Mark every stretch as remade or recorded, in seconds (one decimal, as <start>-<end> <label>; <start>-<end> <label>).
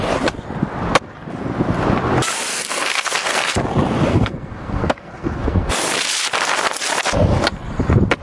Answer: 0.0-2.5 recorded; 2.5-3.6 remade; 3.6-4.1 recorded; 4.1-5.7 remade; 5.7-8.2 recorded